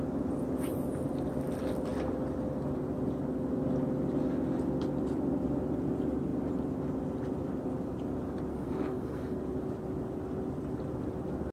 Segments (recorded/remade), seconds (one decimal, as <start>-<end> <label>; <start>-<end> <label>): 0.0-8.5 recorded; 8.5-9.4 remade; 9.4-11.5 recorded

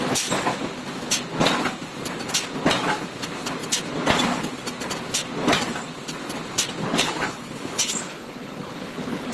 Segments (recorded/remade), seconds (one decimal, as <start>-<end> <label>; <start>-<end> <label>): 0.0-6.8 recorded; 6.8-9.3 remade

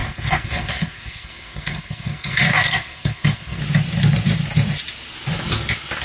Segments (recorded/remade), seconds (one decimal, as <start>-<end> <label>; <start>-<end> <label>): 0.0-3.6 remade; 3.6-6.0 recorded